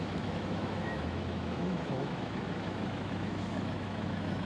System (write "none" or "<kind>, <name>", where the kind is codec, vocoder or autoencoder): autoencoder, DAC-VAE